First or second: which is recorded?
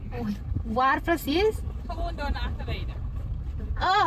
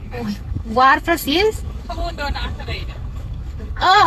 first